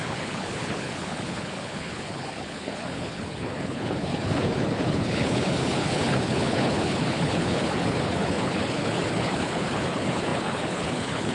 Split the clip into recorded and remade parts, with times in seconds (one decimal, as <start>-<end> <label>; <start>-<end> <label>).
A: 0.0-11.3 remade

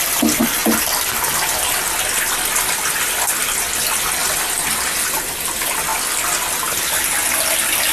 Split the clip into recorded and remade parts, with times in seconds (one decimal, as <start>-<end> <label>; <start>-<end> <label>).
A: 0.0-4.2 remade; 4.2-5.0 recorded; 5.0-5.9 remade; 5.9-6.5 recorded; 6.5-7.9 remade

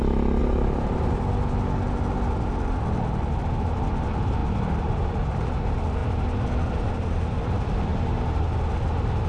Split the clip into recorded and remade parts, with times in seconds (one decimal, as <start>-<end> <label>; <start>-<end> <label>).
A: 0.0-0.4 recorded; 0.4-1.2 remade; 1.2-9.3 recorded

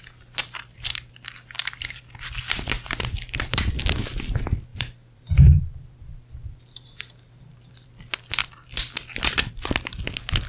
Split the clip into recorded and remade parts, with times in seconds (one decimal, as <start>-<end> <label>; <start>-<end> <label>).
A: 0.0-0.4 recorded; 0.4-3.8 remade; 3.8-4.7 recorded; 4.7-7.9 remade; 7.9-8.4 recorded; 8.4-9.5 remade; 9.5-10.5 recorded

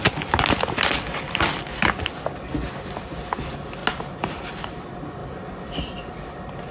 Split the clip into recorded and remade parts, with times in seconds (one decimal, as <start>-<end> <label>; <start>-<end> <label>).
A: 0.0-6.7 recorded

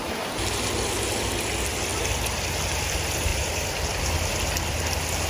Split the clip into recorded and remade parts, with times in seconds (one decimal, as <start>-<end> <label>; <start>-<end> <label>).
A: 0.0-3.3 recorded; 3.3-4.0 remade; 4.0-5.3 recorded

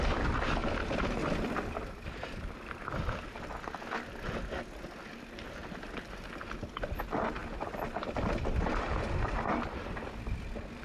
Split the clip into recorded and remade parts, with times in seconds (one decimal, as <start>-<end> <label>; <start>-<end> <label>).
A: 0.0-0.6 recorded; 0.6-1.6 remade; 1.6-5.6 recorded; 5.6-7.0 remade; 7.0-7.4 recorded; 7.4-9.9 remade; 9.9-10.8 recorded